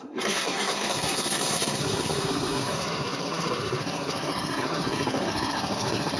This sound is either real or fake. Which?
fake